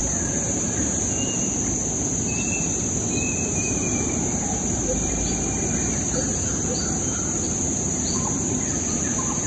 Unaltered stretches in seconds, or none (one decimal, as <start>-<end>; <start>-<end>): 1.0-3.8; 8.3-9.5